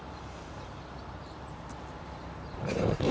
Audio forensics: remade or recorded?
remade